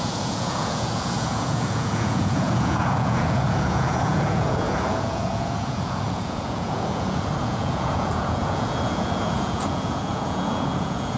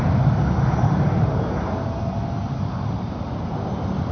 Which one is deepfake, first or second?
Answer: first